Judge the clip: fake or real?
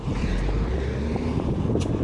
real